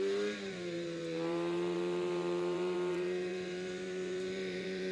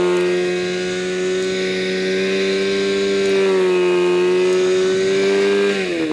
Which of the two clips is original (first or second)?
second